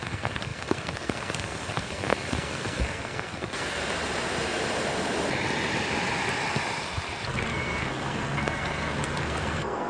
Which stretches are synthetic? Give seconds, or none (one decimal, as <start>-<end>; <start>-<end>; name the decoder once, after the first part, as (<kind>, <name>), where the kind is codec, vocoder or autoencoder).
0.0-3.8 (codec, SNAC); 7.3-9.9